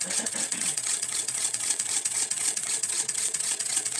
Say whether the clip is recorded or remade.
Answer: remade